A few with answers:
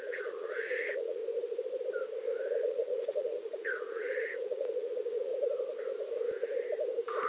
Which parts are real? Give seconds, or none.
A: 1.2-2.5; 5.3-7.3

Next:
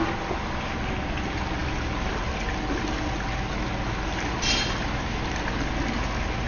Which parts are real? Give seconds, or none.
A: 0.0-6.5

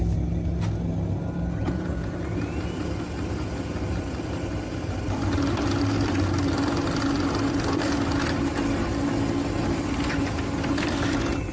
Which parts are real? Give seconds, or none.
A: 0.0-1.6; 2.1-11.5

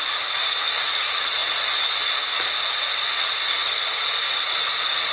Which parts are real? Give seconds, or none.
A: 0.0-5.1

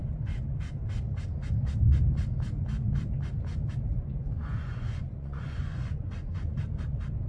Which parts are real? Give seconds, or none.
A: 0.0-3.9; 6.6-7.3

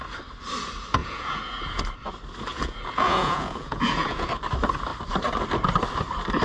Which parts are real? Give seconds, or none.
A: 0.0-1.0; 1.8-2.5; 4.3-6.4

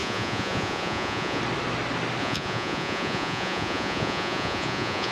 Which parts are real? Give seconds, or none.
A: 1.4-2.2